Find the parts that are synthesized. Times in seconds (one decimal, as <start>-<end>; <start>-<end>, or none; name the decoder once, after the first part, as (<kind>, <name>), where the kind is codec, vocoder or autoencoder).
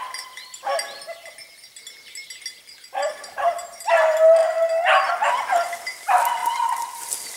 3.0-3.9 (vocoder, BigVGAN v2)